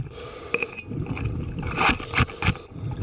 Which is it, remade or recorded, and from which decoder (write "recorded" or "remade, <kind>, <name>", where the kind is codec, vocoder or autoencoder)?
recorded